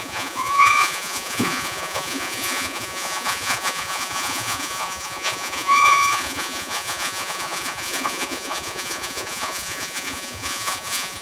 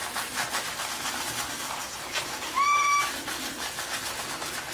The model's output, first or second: first